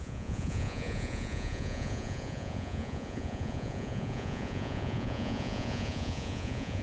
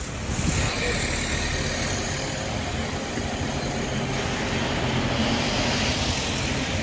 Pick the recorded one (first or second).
second